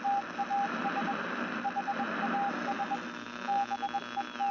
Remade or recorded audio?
recorded